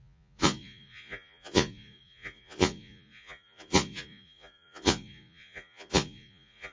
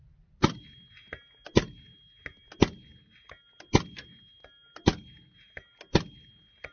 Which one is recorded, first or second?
second